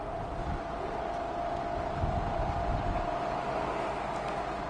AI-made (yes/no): no